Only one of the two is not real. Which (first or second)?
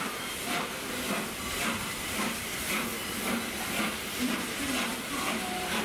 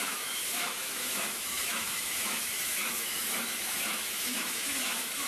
second